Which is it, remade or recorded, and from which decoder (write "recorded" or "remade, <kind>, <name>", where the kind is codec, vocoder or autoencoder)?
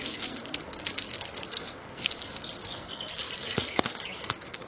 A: remade, codec, SNAC